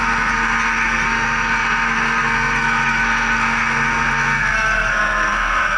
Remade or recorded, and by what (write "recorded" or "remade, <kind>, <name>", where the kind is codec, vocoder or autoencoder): remade, codec, SNAC